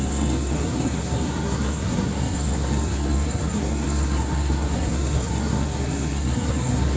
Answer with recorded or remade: remade